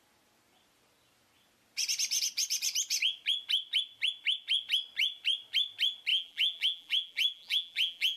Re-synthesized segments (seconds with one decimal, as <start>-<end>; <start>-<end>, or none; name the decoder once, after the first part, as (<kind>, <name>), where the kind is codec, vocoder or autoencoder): 6.1-8.2 (vocoder, BigVGAN v2)